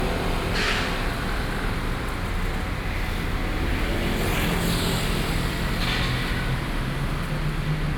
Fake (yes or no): no